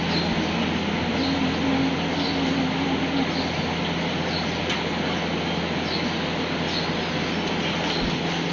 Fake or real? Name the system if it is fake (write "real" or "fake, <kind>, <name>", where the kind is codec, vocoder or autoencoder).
real